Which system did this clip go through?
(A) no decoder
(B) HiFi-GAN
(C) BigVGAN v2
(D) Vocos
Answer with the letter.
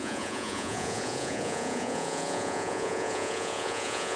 D